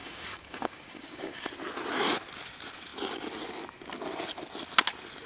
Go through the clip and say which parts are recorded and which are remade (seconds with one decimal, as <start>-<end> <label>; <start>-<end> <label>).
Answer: 0.0-1.5 remade; 1.5-5.3 recorded